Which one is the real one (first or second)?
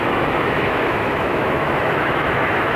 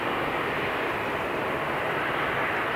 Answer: second